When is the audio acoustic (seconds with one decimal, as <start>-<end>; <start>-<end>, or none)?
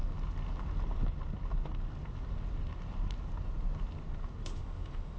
0.0-4.4